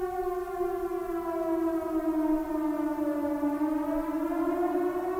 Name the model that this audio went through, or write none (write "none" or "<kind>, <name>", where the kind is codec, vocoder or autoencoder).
none